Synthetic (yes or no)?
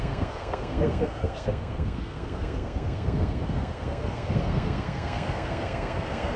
yes